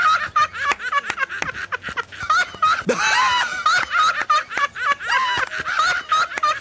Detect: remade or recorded recorded